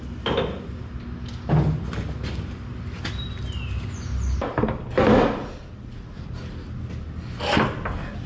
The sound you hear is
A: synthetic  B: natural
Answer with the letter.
B